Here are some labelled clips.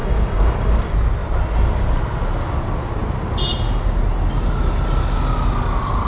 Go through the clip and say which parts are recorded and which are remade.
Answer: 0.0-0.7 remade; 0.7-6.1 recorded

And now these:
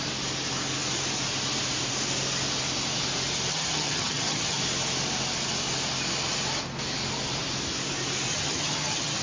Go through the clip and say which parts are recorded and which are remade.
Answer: 0.0-3.5 recorded; 3.5-4.6 remade; 4.6-8.3 recorded; 8.3-9.2 remade

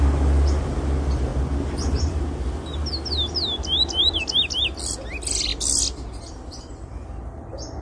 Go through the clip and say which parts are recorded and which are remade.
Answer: 0.0-7.8 recorded